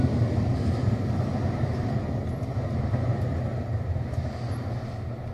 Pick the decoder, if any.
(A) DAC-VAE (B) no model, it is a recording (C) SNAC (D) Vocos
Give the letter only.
B